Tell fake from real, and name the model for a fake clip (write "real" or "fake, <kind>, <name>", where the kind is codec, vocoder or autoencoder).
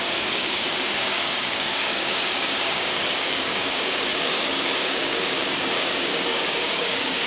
fake, codec, DAC